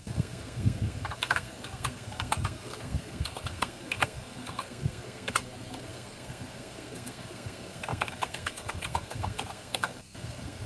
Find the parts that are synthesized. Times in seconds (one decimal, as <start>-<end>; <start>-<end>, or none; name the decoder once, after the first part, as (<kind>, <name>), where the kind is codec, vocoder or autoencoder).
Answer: 0.0-10.7 (codec, SNAC)